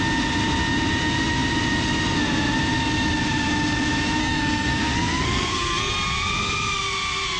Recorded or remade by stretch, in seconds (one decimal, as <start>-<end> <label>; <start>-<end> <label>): 0.0-4.2 recorded; 4.2-5.9 remade; 5.9-7.4 recorded